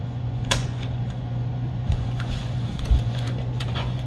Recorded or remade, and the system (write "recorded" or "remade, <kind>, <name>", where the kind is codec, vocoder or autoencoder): remade, vocoder, Vocos